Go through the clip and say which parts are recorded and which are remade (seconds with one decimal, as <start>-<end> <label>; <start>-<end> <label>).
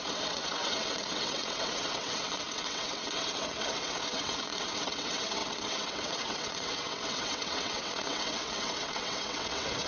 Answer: 0.0-9.9 remade